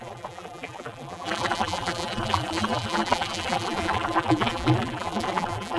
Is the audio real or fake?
fake